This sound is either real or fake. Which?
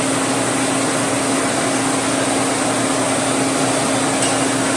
real